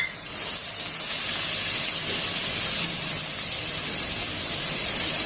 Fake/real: real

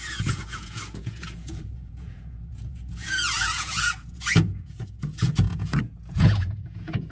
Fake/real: fake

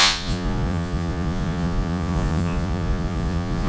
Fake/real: fake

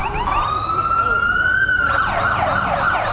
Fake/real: real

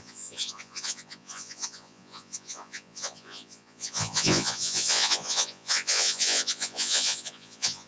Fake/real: fake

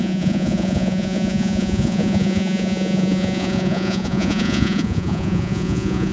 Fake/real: fake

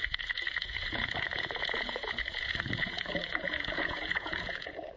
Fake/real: fake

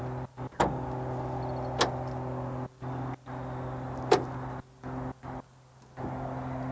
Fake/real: real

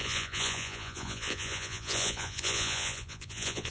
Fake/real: fake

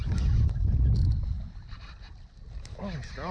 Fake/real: real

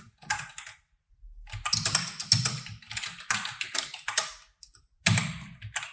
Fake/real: real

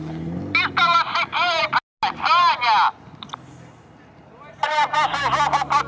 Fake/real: real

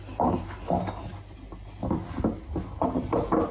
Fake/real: real